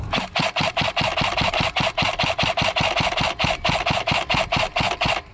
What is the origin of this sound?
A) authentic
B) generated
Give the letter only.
A